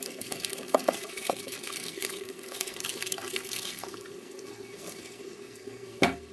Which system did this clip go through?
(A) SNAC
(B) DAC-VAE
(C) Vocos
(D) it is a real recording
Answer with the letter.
A